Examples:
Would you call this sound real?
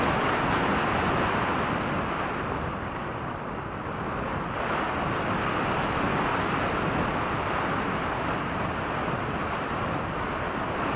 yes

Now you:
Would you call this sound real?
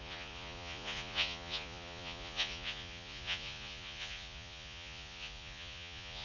no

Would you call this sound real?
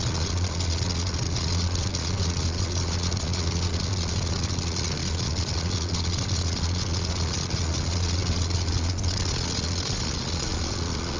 no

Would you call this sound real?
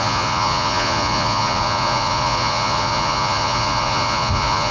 no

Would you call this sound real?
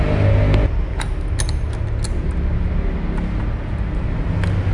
yes